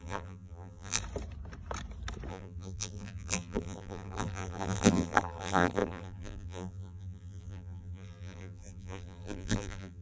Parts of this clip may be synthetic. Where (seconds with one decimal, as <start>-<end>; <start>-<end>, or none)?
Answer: 0.0-1.0; 2.3-10.0